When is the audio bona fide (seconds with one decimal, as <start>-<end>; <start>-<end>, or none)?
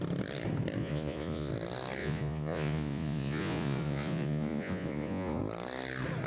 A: 0.0-0.8; 1.5-2.0; 5.4-6.3